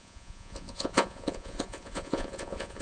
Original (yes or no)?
no